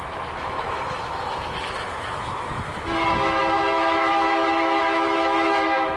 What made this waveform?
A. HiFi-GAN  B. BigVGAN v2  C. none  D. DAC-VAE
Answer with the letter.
D